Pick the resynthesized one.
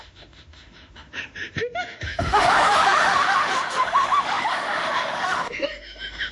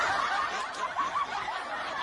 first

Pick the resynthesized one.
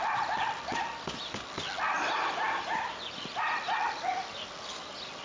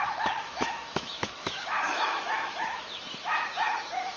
second